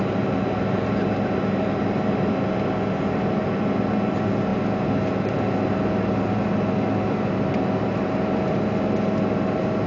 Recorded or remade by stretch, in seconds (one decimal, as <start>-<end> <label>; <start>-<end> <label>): 0.0-9.9 recorded